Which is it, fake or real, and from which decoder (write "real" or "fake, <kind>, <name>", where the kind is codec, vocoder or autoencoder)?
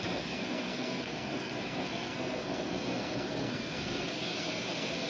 fake, codec, SNAC